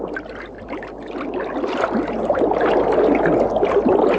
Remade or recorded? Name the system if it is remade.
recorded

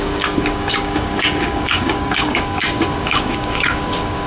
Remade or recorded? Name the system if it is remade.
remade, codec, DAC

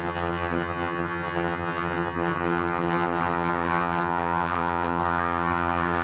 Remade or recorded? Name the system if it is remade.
remade, vocoder, HiFi-GAN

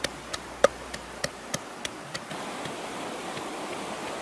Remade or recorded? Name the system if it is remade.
recorded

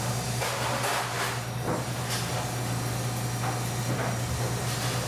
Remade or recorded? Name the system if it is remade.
recorded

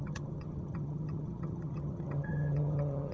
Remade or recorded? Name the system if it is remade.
remade, vocoder, HiFi-GAN